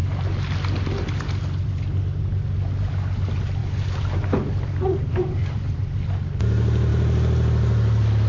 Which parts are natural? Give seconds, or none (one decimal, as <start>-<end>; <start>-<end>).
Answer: 0.0-8.3